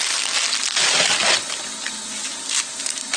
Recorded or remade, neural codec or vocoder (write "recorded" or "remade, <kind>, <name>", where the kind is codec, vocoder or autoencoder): recorded